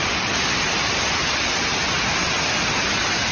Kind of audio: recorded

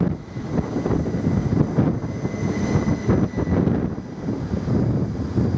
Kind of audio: recorded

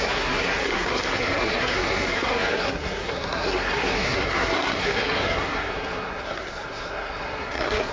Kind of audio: remade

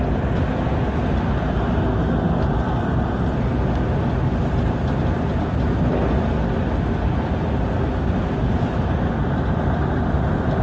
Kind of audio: recorded